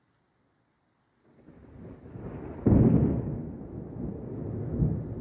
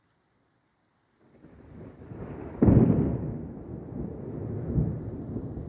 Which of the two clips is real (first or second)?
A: first